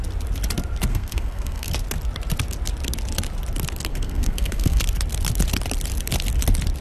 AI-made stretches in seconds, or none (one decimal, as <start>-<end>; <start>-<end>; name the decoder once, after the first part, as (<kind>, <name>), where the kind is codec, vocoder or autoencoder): 0.9-1.7 (codec, SNAC); 3.9-4.8